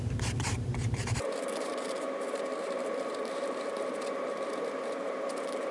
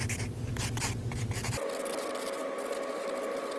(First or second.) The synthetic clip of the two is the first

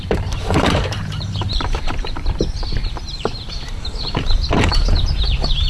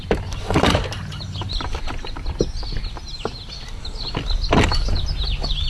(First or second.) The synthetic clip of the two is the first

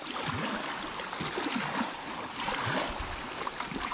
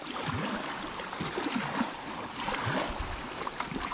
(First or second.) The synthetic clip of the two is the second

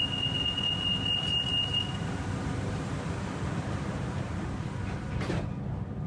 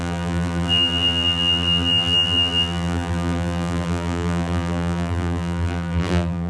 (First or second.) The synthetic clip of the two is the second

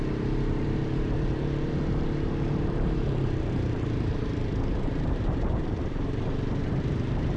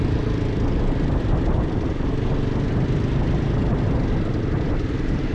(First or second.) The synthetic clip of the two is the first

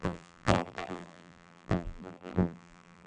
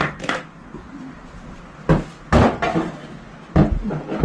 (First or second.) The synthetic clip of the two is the first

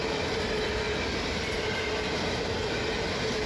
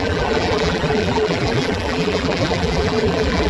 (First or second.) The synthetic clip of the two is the second